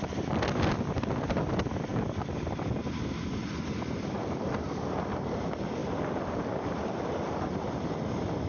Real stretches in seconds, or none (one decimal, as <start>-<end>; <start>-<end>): 0.0-5.8; 7.7-8.5